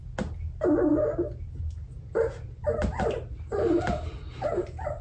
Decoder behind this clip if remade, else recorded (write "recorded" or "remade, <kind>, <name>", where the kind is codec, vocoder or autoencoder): recorded